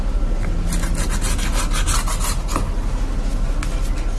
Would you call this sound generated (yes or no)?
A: no